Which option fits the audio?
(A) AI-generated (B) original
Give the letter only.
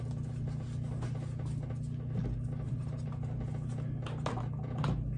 B